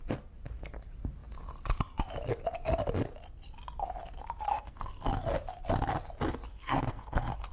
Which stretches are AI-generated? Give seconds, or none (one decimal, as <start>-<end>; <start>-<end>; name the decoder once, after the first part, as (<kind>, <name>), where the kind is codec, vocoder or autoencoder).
4.5-5.1 (codec, SNAC); 6.5-7.5